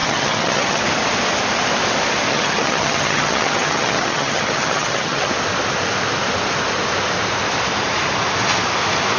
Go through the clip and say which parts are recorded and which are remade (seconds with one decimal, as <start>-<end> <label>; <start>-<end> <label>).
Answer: 0.0-0.8 remade; 0.8-2.3 recorded; 2.3-5.3 remade; 5.3-9.2 recorded